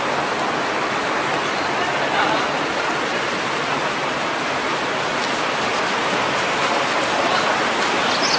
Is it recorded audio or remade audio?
recorded